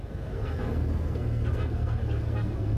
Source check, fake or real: fake